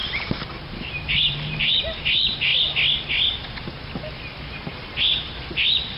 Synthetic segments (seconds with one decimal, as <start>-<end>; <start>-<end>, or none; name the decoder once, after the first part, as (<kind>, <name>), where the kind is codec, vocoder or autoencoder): 0.0-2.5 (vocoder, BigVGAN v2); 5.0-6.0